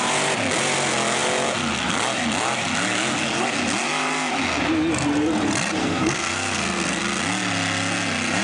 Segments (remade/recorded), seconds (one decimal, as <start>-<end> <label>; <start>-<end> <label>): 0.0-5.8 recorded; 5.8-7.0 remade; 7.0-8.4 recorded